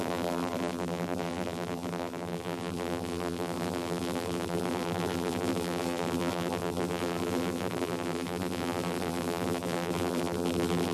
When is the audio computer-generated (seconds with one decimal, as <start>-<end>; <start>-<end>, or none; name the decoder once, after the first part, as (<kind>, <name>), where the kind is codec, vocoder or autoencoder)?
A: 0.0-10.9 (vocoder, BigVGAN v2)